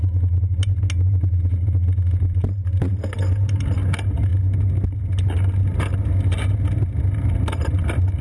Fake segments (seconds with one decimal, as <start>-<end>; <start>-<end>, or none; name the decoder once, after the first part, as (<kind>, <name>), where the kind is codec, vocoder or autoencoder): none